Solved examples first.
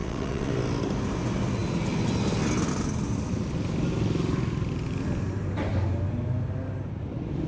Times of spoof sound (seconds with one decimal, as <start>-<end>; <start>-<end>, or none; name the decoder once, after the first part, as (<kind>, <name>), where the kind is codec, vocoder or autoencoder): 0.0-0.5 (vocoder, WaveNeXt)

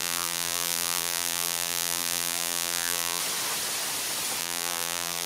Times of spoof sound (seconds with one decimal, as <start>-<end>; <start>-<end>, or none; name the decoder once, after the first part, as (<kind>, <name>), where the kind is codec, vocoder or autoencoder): 0.0-3.2 (vocoder, BigVGAN v2); 4.4-5.3

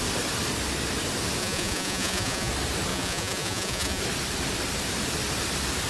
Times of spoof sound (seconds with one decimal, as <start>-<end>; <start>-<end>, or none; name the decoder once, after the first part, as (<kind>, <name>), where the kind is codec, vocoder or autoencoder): 1.4-2.5 (vocoder, Vocos); 2.9-4.0